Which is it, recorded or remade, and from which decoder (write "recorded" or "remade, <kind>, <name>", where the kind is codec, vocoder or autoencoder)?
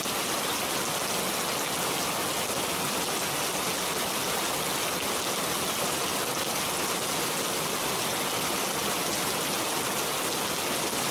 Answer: recorded